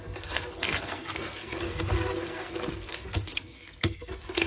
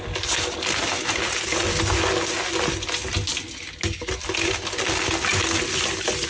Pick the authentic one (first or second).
second